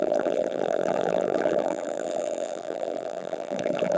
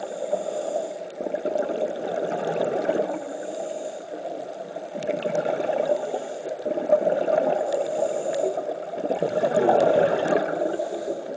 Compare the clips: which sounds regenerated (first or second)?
first